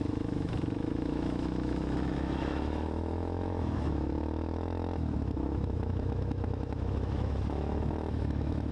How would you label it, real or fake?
fake